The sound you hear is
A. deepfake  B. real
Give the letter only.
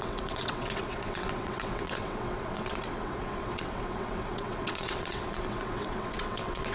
A